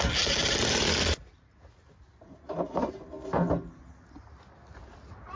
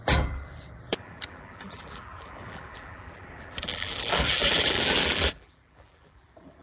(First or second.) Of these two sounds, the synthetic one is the second